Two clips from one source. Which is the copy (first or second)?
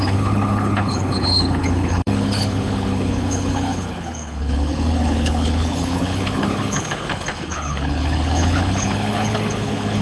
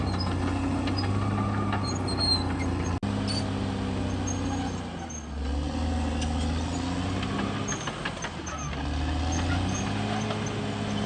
first